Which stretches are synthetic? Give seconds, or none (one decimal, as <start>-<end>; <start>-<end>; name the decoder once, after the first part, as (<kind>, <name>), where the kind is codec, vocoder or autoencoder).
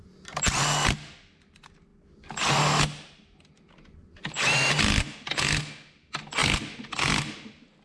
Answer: none